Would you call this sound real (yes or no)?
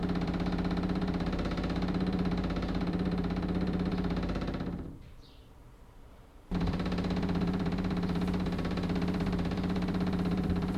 no